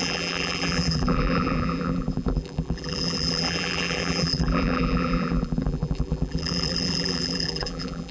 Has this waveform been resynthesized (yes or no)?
yes